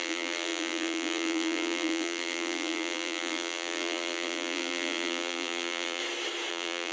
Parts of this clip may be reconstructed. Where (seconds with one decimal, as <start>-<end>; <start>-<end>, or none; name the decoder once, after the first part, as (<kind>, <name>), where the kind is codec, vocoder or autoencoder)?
0.0-6.0 (vocoder, BigVGAN v2); 6.5-6.9